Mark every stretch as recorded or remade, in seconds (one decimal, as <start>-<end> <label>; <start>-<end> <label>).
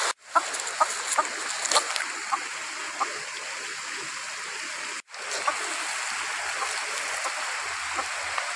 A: 0.0-8.6 recorded